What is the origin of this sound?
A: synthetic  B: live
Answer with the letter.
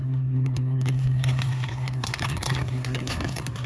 A